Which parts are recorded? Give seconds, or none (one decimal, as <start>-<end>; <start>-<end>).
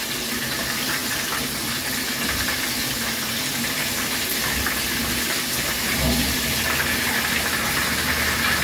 0.0-8.6